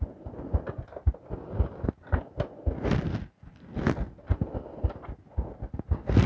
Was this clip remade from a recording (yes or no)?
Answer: no